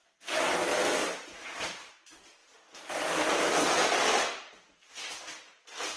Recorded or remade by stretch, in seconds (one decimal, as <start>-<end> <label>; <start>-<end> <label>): 0.0-6.0 recorded